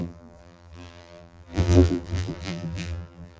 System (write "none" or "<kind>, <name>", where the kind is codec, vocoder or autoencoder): vocoder, BigVGAN v2